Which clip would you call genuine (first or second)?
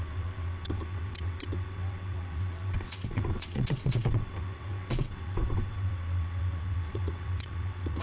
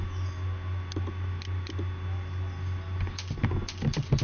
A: second